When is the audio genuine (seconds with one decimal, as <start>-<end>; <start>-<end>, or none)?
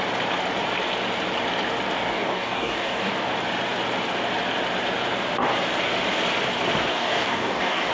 0.0-2.1; 3.1-6.9